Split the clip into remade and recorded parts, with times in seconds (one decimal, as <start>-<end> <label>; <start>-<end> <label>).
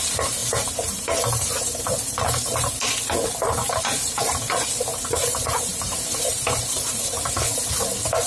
0.0-0.4 recorded; 0.4-2.7 remade; 2.7-4.9 recorded; 4.9-7.3 remade; 7.3-8.3 recorded